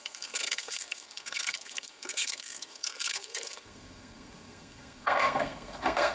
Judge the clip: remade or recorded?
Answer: remade